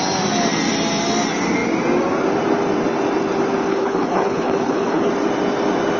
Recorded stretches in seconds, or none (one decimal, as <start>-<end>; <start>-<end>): 0.0-3.7; 5.1-6.0